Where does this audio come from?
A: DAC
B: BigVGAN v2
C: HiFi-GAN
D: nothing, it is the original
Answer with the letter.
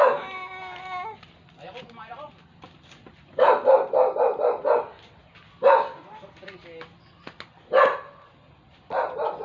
D